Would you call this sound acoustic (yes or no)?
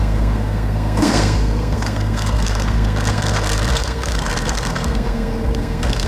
no